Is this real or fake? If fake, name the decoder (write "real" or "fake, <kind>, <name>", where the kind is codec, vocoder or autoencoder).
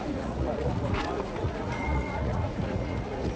fake, vocoder, Vocos